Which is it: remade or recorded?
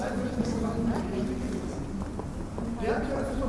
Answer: recorded